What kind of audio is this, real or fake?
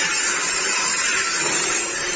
fake